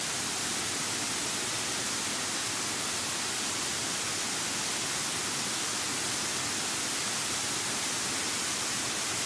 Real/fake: real